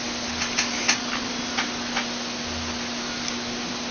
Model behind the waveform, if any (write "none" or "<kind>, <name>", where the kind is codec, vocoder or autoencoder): none